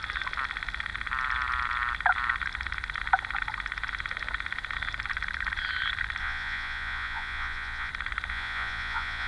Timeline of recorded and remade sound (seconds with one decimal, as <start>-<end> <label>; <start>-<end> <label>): 0.0-6.2 recorded; 6.2-7.9 remade; 7.9-8.3 recorded; 8.3-9.3 remade